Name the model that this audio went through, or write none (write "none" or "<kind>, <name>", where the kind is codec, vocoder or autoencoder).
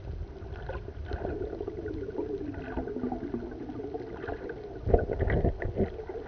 none